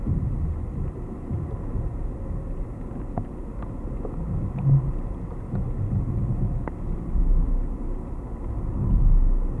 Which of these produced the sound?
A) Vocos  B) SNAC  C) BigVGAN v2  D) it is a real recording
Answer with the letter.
D